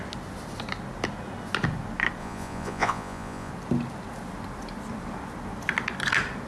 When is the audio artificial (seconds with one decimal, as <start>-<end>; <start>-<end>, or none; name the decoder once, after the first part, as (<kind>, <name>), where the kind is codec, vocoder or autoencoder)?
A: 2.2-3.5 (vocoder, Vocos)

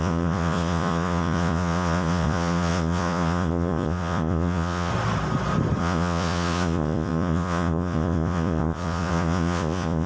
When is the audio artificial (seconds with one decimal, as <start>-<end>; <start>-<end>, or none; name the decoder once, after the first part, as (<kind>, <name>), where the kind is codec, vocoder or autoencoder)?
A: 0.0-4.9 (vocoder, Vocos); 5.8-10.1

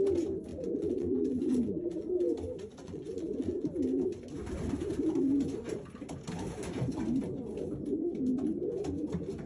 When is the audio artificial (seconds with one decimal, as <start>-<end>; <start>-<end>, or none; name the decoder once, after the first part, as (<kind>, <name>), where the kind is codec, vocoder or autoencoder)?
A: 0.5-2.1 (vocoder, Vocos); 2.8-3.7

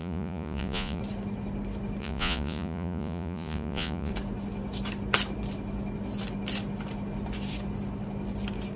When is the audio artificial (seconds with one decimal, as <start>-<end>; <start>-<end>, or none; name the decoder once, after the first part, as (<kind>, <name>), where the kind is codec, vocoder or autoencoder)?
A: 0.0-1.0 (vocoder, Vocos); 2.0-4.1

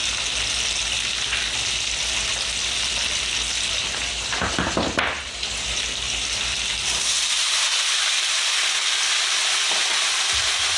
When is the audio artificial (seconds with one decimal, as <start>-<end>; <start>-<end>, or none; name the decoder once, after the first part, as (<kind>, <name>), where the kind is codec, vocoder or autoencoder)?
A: none